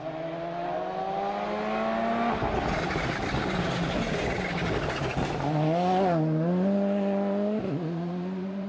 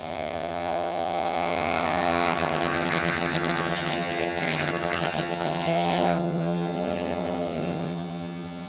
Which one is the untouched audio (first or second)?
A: first